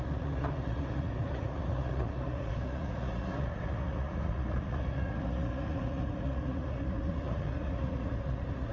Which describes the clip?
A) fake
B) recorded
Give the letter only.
A